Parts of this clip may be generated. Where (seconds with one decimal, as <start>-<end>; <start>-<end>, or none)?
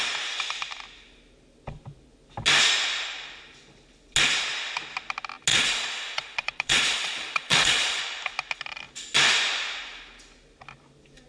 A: 5.5-8.0